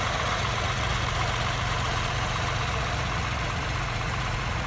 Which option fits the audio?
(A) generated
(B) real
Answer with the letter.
A